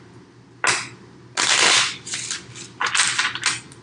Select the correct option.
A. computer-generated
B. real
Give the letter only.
B